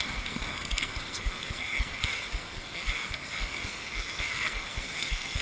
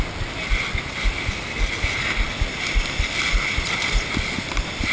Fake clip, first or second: first